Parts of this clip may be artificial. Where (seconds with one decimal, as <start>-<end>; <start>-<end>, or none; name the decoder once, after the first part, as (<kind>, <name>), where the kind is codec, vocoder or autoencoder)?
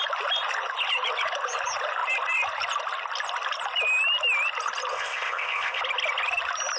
4.9-5.8 (codec, ZipCodec)